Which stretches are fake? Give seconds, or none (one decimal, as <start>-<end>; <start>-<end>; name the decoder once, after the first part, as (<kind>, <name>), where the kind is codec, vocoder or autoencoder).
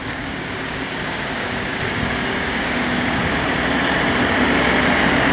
0.0-3.2 (codec, DAC)